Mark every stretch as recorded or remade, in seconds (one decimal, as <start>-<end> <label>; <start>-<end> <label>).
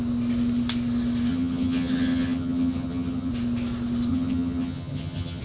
0.0-1.3 recorded; 1.3-3.3 remade; 3.3-4.1 recorded; 4.1-5.4 remade